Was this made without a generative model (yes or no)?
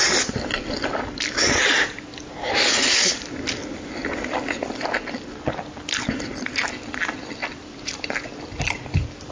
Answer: yes